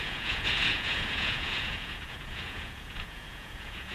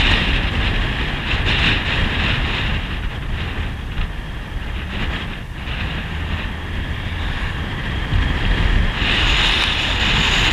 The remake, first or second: first